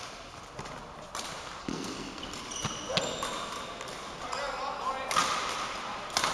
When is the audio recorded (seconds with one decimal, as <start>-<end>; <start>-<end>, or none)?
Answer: 0.0-1.6; 2.2-6.3